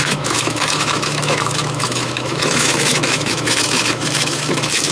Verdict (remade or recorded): remade